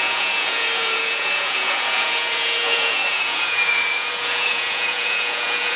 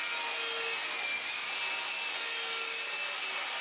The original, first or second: second